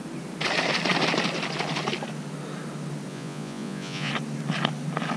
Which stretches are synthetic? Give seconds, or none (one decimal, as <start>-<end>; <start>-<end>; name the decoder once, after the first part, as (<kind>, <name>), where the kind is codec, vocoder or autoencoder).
3.1-4.1 (vocoder, Vocos)